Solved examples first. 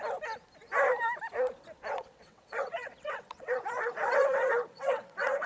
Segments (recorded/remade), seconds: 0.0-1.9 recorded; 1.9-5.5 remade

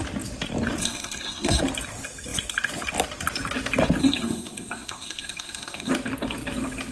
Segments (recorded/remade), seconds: 0.0-0.8 recorded; 0.8-1.6 remade; 1.6-4.0 recorded; 4.0-5.9 remade; 5.9-6.9 recorded